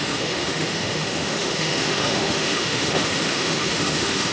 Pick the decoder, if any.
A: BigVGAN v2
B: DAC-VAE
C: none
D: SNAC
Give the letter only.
B